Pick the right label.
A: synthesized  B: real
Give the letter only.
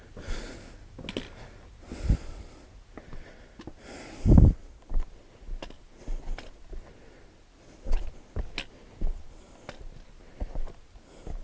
B